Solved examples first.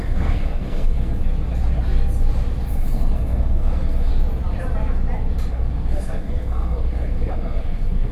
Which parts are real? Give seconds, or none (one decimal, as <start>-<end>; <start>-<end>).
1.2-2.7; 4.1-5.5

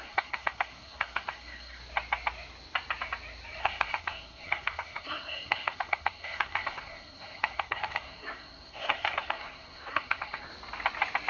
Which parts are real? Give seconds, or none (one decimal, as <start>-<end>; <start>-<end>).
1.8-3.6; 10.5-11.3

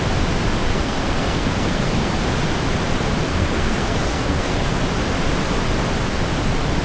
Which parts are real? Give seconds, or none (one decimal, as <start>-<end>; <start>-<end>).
0.0-0.7; 2.1-3.3; 4.8-6.8

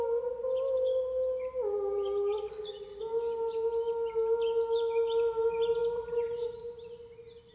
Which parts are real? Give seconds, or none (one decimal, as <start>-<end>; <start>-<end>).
0.0-7.5

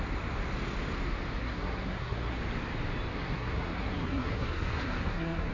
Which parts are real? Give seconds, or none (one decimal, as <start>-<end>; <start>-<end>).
0.0-1.4; 2.4-3.1

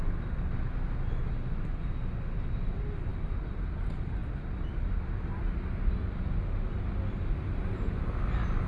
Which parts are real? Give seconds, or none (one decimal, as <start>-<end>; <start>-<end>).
0.0-8.7

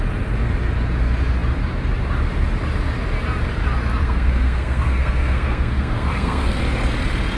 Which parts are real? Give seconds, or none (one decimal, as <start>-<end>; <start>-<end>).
0.0-4.0; 6.6-7.4

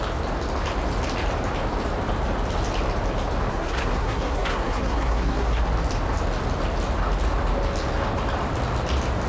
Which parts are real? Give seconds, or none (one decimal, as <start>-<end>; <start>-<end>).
0.0-3.5; 5.6-9.3